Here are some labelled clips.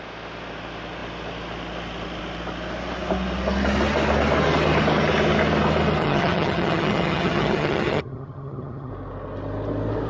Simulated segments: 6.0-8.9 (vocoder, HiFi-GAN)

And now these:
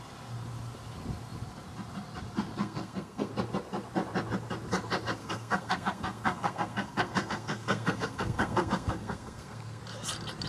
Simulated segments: 2.6-3.3 (codec, SNAC); 5.2-9.8

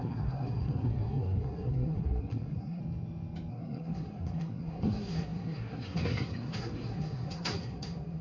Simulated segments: 0.0-2.8 (codec, SNAC); 3.5-8.2

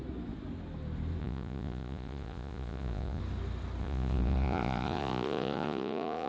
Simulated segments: 1.2-3.2 (vocoder, Vocos); 3.8-6.3

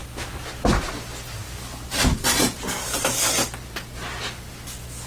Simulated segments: 0.0-0.9 (vocoder, BigVGAN v2)

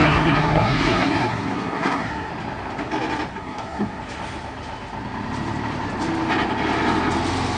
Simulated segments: 0.0-2.3 (codec, SNAC); 3.3-4.0

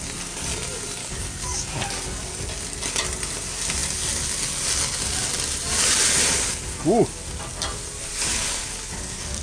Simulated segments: 1.0-1.8 (codec, DAC); 8.3-9.4